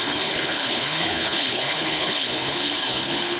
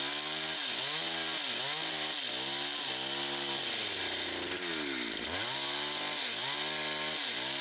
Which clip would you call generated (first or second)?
first